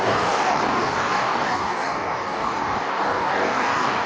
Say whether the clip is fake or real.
fake